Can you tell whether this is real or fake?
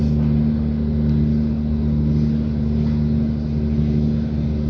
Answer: real